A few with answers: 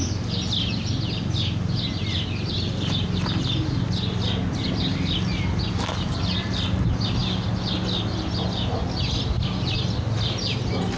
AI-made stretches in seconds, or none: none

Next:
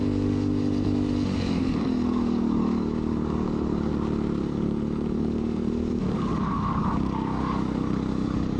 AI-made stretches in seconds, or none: 0.0-3.9 (codec, DAC); 4.4-8.6

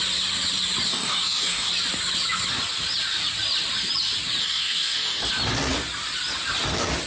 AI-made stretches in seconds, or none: 0.9-1.7 (codec, DAC); 4.4-5.3

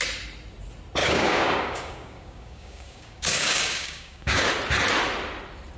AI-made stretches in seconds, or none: 1.0-4.5 (codec, DAC)

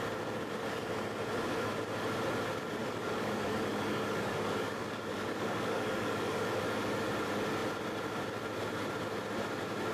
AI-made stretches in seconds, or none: 2.8-6.6 (codec, DAC)

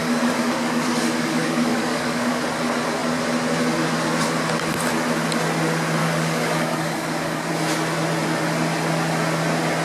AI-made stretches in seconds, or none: 0.0-2.4 (codec, DAC); 6.0-7.5

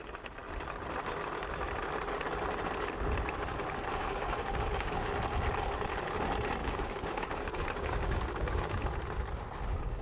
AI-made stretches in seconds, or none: 4.0-5.1 (codec, DAC); 6.6-8.8

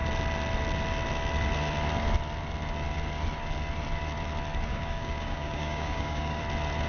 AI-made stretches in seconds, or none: 4.7-6.4 (codec, DAC)